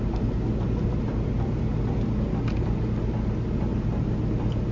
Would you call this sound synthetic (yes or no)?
no